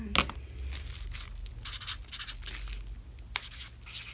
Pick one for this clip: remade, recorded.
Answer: recorded